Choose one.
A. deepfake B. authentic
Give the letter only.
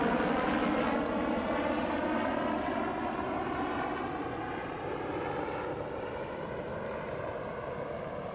B